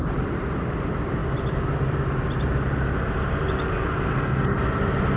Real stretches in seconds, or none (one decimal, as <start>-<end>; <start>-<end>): 0.0-5.2